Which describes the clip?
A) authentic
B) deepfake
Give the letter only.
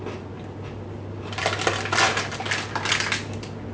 A